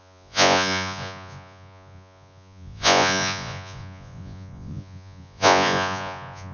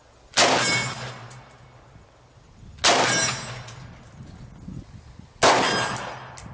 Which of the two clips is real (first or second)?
second